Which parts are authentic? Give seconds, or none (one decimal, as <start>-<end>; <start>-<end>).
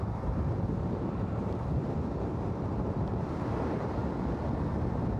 4.0-4.7